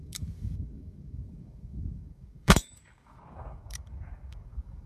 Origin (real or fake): fake